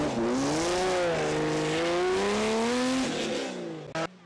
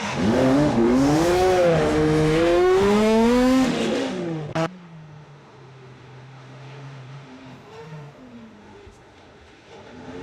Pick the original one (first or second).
first